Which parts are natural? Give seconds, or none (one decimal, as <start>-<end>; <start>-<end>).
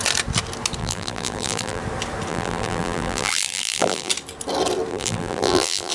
0.0-0.8; 1.8-2.3; 4.1-4.9